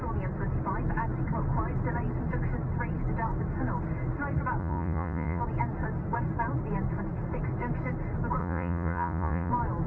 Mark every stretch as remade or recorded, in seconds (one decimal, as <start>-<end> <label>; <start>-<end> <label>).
0.0-4.6 recorded; 4.6-5.4 remade; 5.4-8.4 recorded; 8.4-9.5 remade; 9.5-9.9 recorded